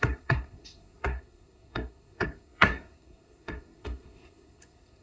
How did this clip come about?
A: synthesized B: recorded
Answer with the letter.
A